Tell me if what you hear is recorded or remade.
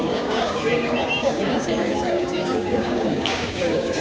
remade